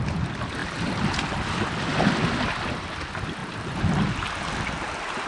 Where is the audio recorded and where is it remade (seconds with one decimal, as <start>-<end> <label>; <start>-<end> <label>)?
0.0-5.3 recorded